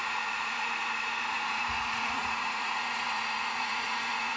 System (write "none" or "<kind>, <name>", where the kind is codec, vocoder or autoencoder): vocoder, Vocos